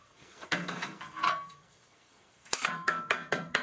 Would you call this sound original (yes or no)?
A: no